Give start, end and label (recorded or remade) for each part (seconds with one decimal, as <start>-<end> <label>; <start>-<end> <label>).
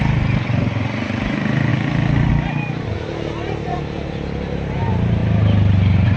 0.0-6.2 recorded